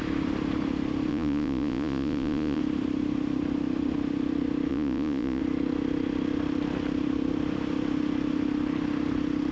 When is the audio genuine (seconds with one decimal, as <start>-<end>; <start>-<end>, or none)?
0.0-1.1; 2.6-4.7; 5.4-9.5